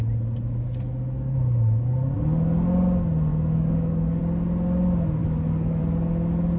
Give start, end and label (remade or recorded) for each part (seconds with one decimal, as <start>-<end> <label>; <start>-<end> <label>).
0.0-3.3 recorded; 3.3-4.2 remade; 4.2-5.2 recorded; 5.2-5.8 remade; 5.8-6.6 recorded